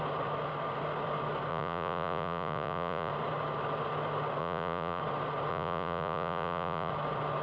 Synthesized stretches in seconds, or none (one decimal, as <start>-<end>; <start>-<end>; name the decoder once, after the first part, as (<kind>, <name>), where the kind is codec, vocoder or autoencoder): 1.5-3.1 (vocoder, Vocos); 4.4-5.0; 5.5-6.9